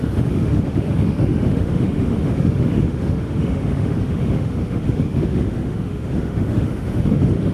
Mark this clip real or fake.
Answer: fake